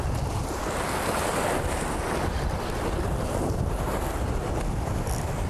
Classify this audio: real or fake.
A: real